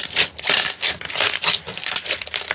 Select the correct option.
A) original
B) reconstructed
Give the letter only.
B